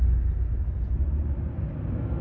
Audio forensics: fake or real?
real